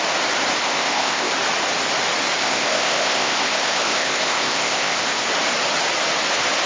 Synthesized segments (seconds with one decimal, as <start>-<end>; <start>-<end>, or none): 0.6-1.3; 2.4-5.3